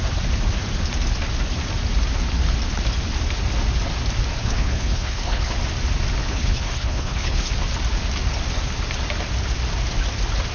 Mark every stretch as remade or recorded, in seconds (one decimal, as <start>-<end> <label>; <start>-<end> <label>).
0.0-4.4 recorded; 4.4-5.5 remade; 5.5-6.2 recorded; 6.2-7.5 remade; 7.5-10.5 recorded

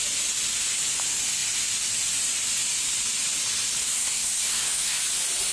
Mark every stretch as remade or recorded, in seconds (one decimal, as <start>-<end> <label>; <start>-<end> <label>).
0.0-3.8 recorded; 3.8-5.0 remade; 5.0-5.5 recorded